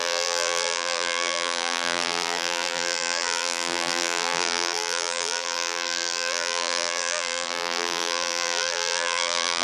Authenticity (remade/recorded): remade